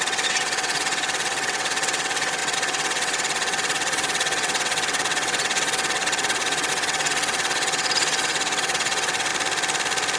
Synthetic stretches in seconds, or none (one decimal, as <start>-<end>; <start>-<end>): 0.0-9.3